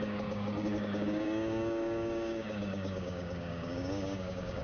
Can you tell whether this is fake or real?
fake